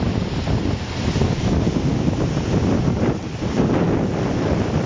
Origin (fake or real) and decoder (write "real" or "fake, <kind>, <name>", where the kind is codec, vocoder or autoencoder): real